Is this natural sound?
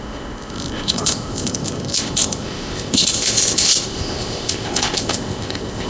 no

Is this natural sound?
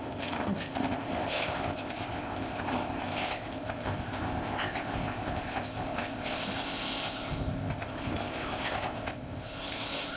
no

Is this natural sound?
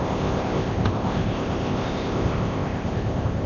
no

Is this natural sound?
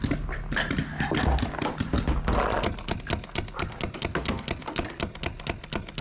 yes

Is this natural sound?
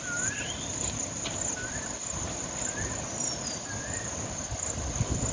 yes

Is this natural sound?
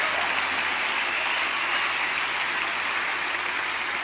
yes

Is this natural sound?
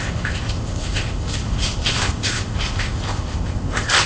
no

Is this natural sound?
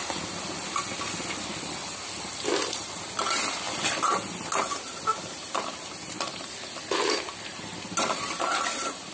yes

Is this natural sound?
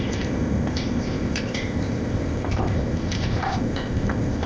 no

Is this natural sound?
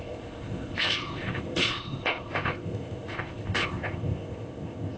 no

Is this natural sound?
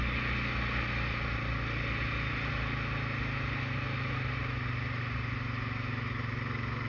yes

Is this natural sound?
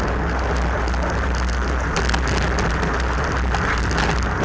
yes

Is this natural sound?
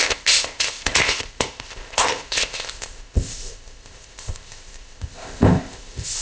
no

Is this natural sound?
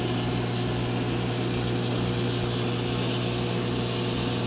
yes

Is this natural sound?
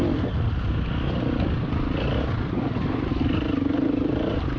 yes